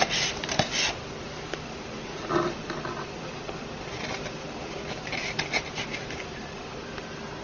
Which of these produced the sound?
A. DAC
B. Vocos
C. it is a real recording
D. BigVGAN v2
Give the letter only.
C